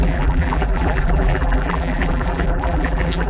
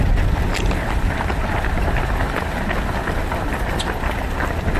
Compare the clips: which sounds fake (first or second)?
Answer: first